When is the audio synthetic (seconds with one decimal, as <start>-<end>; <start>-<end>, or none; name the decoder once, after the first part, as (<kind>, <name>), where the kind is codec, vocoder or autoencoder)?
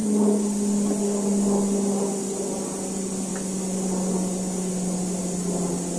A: none